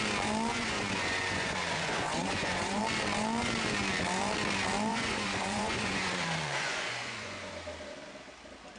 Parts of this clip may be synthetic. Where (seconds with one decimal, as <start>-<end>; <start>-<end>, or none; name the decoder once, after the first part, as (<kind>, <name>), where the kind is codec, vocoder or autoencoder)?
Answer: 0.5-2.8 (vocoder, Vocos); 4.9-7.5